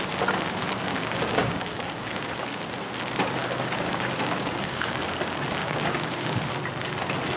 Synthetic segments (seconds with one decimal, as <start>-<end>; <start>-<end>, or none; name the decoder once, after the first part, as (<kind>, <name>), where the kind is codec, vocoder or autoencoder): 0.9-2.7 (codec, DAC); 3.4-5.0; 5.6-6.4